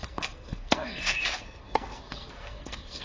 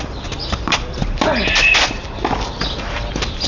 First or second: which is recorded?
second